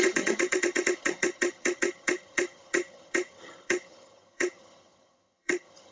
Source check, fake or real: fake